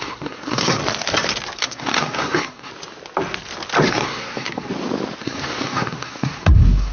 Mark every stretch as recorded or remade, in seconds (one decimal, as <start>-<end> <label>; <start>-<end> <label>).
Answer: 0.0-0.8 remade; 0.8-1.6 recorded; 1.6-2.7 remade; 2.7-3.9 recorded; 3.9-4.7 remade; 4.7-5.2 recorded; 5.2-6.9 remade

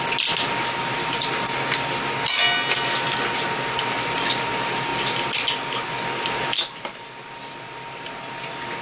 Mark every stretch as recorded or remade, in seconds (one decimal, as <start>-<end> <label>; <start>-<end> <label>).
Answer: 0.0-8.8 recorded

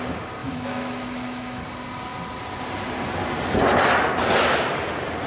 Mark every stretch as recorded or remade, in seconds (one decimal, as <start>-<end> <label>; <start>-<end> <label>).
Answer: 0.0-0.4 recorded; 0.4-1.6 remade; 1.6-5.3 recorded

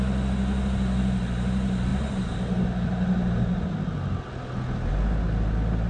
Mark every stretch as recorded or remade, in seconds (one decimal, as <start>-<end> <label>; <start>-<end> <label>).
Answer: 0.0-5.9 recorded

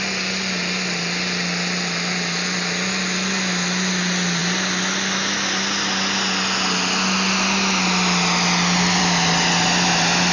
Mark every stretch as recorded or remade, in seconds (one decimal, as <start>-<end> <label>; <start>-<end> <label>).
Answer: 0.0-10.3 recorded